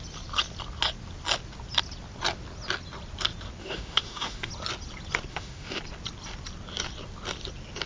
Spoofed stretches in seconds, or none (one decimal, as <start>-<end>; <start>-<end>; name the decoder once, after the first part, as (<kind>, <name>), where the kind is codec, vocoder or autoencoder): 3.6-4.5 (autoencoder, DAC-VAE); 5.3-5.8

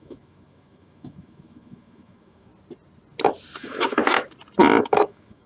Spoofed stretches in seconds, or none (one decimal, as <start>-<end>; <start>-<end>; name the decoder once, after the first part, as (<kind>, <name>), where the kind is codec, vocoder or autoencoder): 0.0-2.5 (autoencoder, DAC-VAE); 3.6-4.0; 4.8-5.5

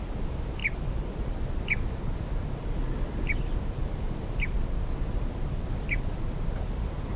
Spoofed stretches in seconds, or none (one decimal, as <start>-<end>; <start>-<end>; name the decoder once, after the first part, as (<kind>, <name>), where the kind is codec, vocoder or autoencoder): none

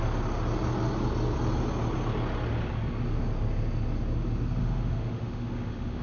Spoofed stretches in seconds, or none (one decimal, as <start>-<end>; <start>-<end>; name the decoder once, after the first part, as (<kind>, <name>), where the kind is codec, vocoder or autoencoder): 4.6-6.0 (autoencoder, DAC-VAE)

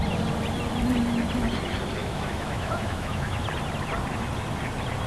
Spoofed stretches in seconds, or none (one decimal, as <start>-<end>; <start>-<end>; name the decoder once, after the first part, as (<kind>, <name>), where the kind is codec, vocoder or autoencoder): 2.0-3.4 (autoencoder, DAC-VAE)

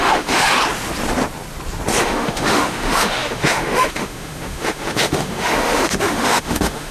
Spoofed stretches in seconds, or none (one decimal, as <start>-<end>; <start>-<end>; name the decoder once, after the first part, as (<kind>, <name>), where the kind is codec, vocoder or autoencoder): 0.0-0.6 (autoencoder, DAC-VAE); 2.0-6.9

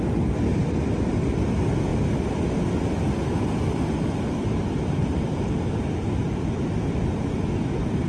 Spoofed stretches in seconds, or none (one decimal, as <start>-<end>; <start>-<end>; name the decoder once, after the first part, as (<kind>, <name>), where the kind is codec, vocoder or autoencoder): none